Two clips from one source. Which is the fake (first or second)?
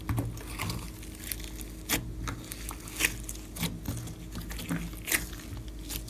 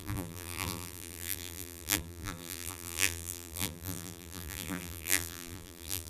second